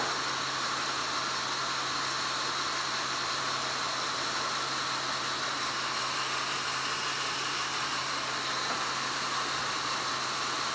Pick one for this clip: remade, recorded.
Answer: recorded